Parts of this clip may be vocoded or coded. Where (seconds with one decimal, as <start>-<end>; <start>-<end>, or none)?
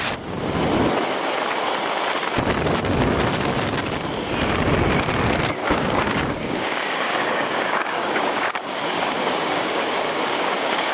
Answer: 5.6-10.9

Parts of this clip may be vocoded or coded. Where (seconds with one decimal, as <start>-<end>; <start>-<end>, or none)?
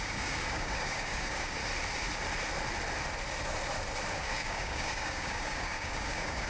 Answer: 0.0-1.6; 4.2-6.5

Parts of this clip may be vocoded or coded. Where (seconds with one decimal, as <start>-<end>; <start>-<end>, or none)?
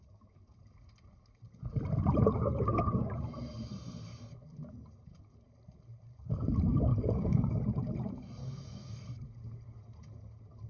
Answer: 6.9-7.6; 8.4-9.0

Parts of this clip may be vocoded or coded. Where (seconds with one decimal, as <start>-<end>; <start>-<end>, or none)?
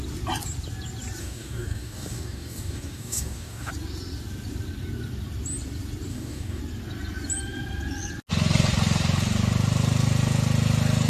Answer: 1.2-3.7; 6.1-6.6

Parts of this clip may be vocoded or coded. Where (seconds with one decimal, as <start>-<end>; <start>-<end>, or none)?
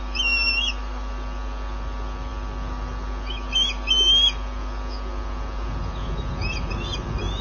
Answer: none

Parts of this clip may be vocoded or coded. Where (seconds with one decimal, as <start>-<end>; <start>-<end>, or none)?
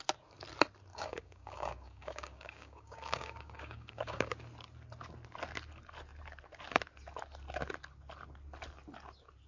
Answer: 0.9-4.3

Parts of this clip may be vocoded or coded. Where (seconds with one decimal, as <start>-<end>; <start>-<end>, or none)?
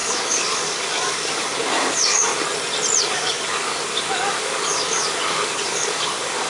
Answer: 0.0-2.3; 3.0-6.5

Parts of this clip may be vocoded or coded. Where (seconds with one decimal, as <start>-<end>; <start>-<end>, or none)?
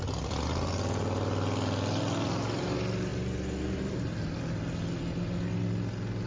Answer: none